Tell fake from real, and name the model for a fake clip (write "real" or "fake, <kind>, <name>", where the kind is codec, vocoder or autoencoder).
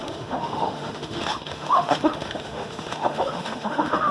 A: fake, autoencoder, DAC-VAE